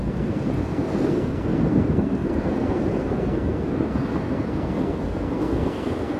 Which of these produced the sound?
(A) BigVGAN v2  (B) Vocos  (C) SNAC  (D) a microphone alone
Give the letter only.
C